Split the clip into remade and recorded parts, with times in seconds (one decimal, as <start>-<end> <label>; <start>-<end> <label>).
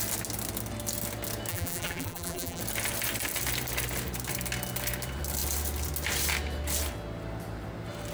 0.0-1.5 recorded; 1.5-2.6 remade; 2.6-8.1 recorded